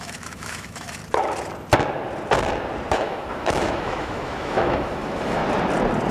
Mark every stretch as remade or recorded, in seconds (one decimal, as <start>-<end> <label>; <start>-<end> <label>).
0.0-1.0 remade; 1.0-2.9 recorded; 2.9-5.4 remade; 5.4-6.1 recorded